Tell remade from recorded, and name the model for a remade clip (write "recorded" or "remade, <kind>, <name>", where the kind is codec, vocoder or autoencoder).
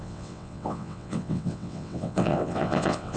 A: remade, vocoder, WaveNeXt